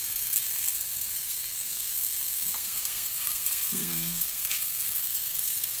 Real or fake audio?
fake